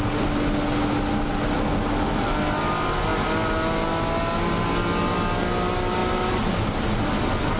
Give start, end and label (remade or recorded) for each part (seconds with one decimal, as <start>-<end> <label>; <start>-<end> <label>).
0.0-7.6 recorded